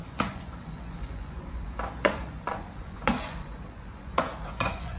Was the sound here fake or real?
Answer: fake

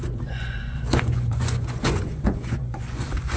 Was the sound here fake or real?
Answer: fake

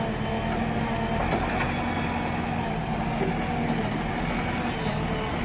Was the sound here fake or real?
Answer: real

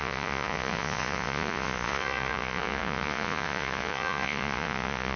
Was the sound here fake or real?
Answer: fake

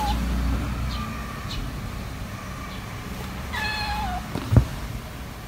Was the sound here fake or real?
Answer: real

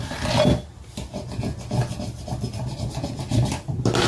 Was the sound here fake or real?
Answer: real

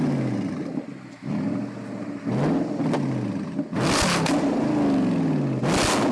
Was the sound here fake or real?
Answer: real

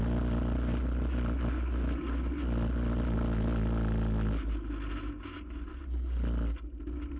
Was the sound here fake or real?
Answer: real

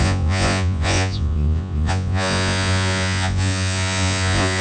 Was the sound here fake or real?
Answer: fake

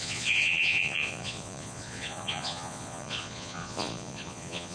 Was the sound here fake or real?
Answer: fake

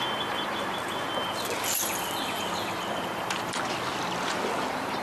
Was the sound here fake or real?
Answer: real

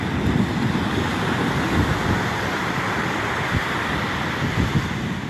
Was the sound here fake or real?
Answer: real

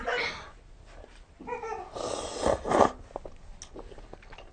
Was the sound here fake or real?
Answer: real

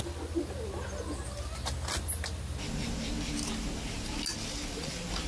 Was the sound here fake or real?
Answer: real